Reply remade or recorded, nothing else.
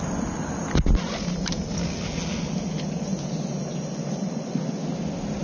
recorded